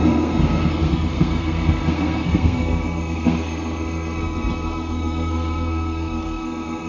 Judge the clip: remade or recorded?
remade